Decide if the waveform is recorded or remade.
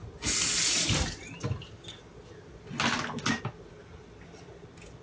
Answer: recorded